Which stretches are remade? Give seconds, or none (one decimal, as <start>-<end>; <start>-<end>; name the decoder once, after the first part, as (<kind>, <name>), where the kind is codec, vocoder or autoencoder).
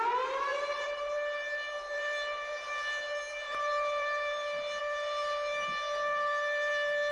0.5-4.8 (vocoder, BigVGAN v2)